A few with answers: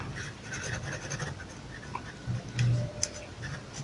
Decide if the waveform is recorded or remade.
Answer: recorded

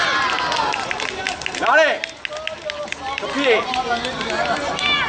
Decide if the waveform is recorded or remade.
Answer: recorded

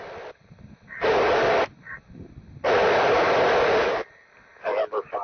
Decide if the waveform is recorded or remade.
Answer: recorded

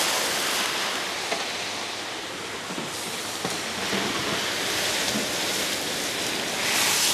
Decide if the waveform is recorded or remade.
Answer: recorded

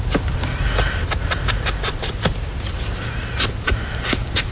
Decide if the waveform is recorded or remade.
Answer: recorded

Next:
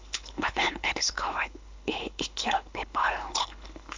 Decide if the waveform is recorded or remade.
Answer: remade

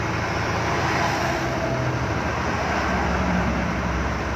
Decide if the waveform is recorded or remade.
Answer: recorded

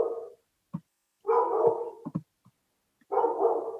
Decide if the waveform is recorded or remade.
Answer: recorded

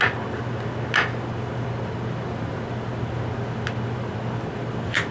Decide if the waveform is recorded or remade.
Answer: recorded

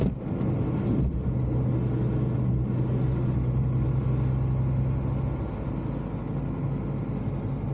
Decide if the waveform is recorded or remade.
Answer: recorded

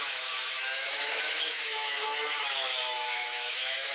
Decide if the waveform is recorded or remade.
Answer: remade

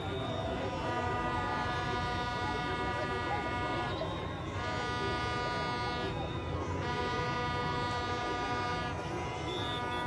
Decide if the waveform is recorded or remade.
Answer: recorded